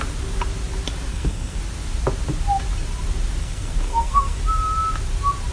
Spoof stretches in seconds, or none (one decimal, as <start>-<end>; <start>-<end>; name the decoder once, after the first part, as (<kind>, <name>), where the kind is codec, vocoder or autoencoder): 1.1-1.6 (codec, SNAC); 3.4-4.4